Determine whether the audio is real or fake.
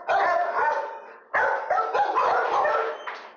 real